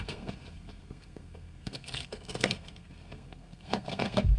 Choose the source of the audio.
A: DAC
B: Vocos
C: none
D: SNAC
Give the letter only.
D